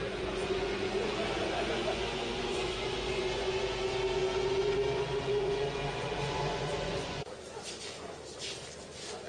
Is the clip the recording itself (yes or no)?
no